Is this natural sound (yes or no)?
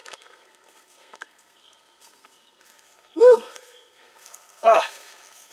no